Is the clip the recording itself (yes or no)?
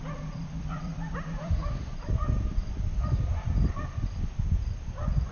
no